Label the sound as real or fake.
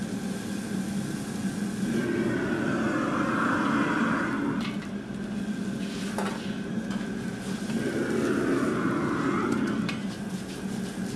real